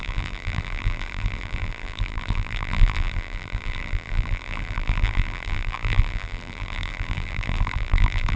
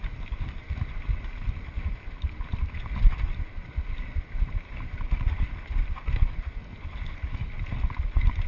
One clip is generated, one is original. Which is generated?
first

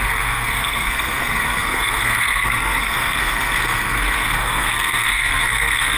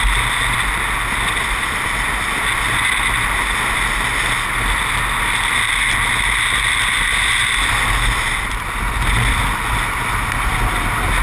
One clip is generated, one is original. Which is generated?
first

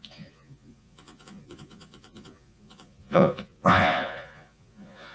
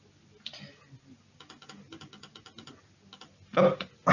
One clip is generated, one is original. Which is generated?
first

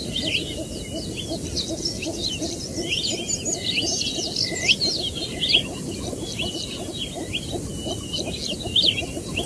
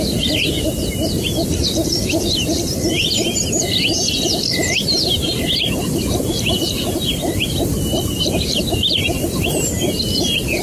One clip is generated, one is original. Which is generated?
second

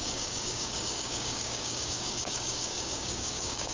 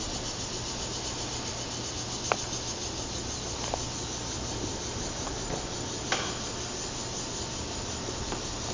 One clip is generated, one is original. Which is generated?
first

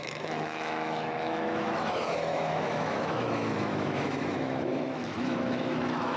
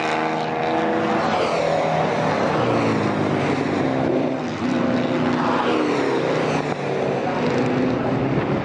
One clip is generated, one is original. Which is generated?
first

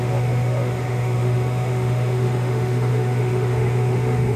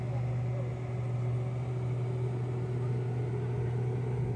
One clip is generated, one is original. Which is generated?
first